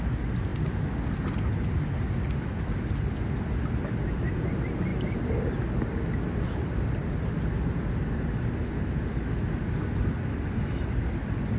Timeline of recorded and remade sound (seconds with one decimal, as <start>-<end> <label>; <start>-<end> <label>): 0.0-11.6 recorded